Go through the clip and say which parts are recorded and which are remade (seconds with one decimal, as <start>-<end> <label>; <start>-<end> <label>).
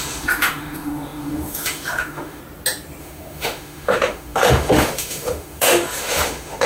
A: 0.0-2.4 remade; 2.4-3.0 recorded; 3.0-6.7 remade